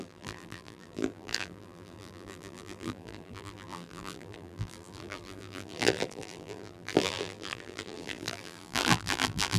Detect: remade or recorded remade